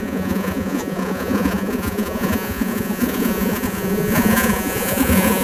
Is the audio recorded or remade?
remade